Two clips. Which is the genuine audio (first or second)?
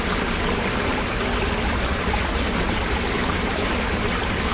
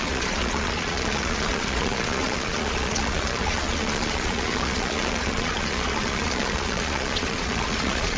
first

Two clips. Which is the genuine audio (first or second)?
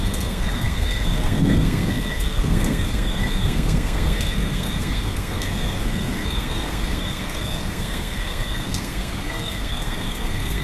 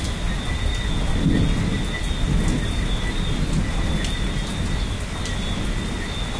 second